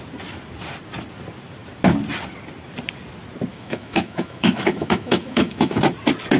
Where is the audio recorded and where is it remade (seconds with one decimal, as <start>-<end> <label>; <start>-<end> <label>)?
0.0-3.5 recorded; 3.5-5.8 remade; 5.8-6.4 recorded

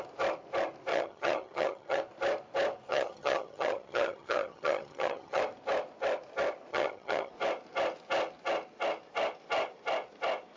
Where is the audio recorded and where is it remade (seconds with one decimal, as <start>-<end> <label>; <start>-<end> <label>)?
0.0-0.9 recorded; 0.9-2.0 remade; 2.0-2.9 recorded; 2.9-5.4 remade; 5.4-6.7 recorded; 6.7-7.3 remade; 7.3-10.6 recorded